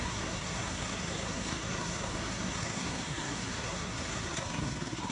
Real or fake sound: fake